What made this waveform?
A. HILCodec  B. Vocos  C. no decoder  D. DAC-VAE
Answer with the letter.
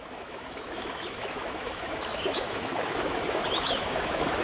D